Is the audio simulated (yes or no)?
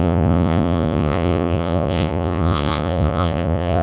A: yes